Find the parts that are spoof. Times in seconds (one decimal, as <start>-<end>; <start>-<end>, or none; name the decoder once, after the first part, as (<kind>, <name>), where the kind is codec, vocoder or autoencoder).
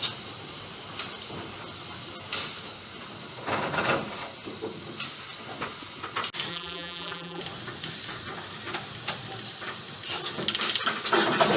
6.5-7.4 (vocoder, BigVGAN v2)